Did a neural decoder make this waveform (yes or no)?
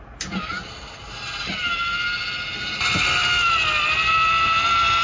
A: no